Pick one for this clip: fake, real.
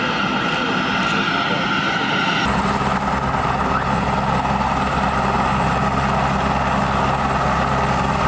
real